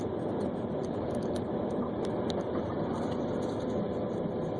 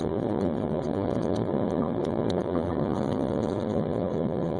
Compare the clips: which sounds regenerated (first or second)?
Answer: second